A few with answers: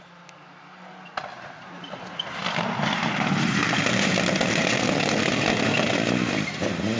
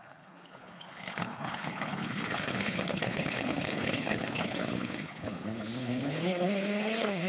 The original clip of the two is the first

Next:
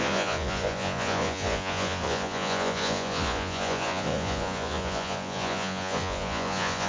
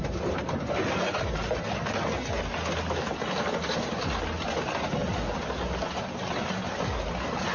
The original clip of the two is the second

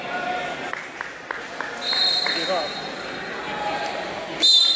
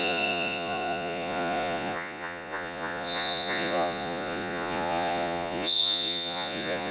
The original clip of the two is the first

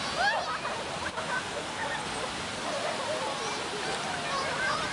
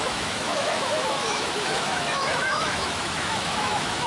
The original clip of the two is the first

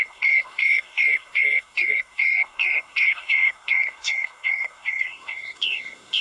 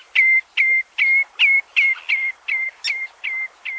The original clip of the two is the second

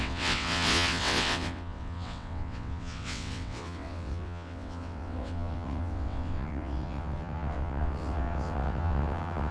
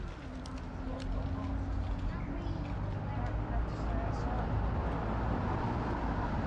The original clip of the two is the second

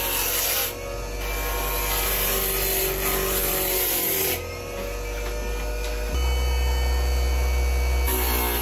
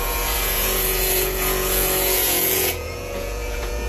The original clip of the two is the first